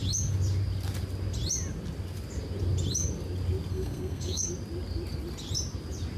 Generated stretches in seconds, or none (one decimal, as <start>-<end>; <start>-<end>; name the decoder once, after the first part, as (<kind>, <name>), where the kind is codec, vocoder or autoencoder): 3.7-4.5 (codec, SNAC)